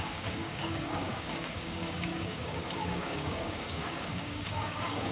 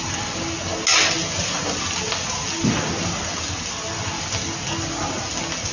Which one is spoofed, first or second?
first